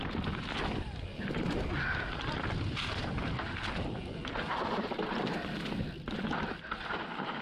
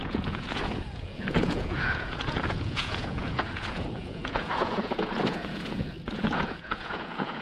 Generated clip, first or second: second